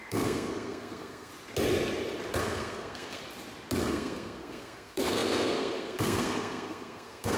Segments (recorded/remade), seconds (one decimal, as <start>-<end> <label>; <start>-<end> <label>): 0.0-1.3 remade; 1.3-2.4 recorded; 2.4-3.2 remade; 3.2-3.8 recorded; 3.8-7.4 remade